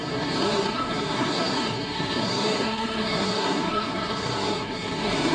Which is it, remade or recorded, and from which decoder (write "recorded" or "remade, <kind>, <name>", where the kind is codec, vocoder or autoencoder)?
remade, codec, SNAC